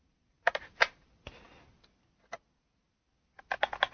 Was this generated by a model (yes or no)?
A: no